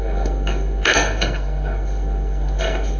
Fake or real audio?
fake